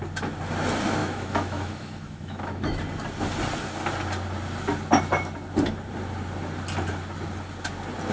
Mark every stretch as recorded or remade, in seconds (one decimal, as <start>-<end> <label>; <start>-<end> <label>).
0.0-1.0 recorded; 1.0-2.8 remade; 2.8-8.1 recorded